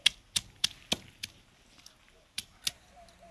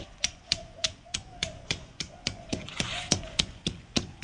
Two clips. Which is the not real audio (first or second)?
second